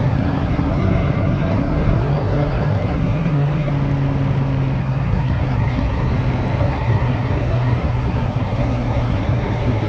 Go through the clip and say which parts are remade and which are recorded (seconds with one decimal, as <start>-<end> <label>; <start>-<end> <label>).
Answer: 0.0-3.7 remade; 3.7-4.8 recorded; 4.8-6.1 remade; 6.1-6.6 recorded; 6.6-9.9 remade